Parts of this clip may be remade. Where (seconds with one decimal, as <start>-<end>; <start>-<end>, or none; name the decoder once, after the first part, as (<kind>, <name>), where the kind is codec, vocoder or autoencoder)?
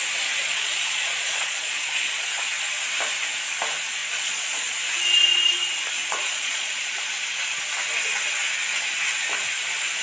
0.4-2.5 (vocoder, Vocos); 4.0-4.7; 6.0-7.1